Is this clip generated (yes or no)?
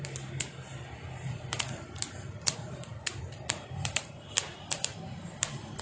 yes